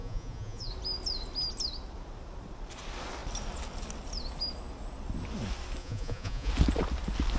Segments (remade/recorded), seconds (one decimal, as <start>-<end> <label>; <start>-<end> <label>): 0.0-0.7 remade; 0.7-5.8 recorded; 5.8-6.5 remade; 6.5-7.4 recorded